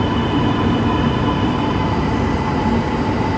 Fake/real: real